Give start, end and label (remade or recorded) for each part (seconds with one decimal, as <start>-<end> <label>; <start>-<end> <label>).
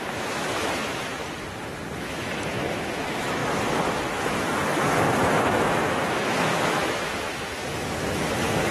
0.0-1.2 remade; 1.2-2.0 recorded; 2.0-3.4 remade; 3.4-3.9 recorded; 3.9-8.7 remade